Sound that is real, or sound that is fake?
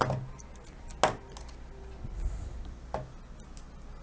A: real